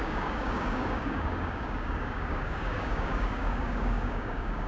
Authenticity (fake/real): fake